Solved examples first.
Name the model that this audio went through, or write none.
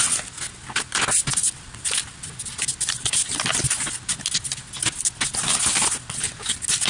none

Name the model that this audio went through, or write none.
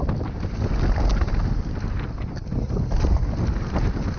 none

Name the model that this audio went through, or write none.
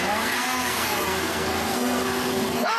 codec, SNAC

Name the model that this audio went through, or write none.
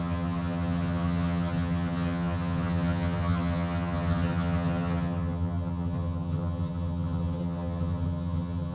vocoder, HiFi-GAN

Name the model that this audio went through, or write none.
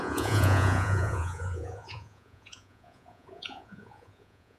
vocoder, Vocos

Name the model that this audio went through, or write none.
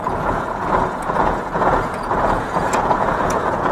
vocoder, Vocos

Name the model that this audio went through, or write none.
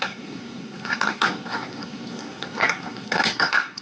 codec, SNAC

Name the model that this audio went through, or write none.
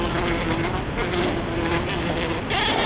none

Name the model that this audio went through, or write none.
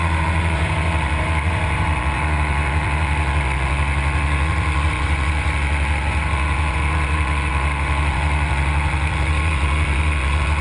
vocoder, Vocos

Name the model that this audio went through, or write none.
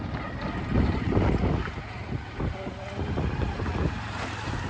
none